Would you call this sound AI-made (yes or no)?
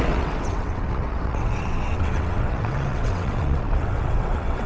yes